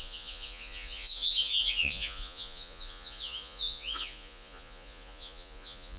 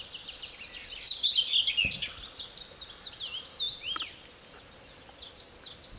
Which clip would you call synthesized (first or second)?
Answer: first